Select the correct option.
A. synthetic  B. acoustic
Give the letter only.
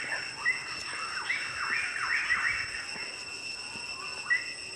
B